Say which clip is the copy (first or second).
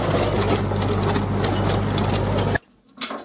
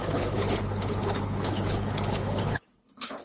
second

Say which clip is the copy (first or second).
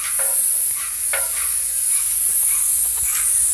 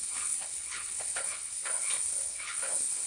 second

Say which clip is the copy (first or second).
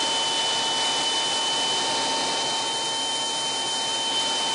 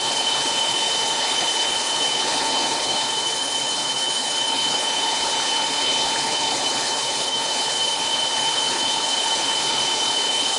second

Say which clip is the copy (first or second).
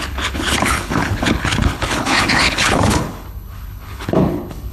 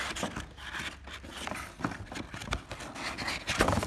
first